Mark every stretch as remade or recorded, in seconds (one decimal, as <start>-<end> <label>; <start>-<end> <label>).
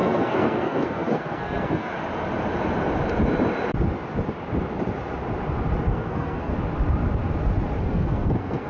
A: 0.0-1.9 remade; 1.9-5.9 recorded; 5.9-6.5 remade; 6.5-7.8 recorded; 7.8-8.7 remade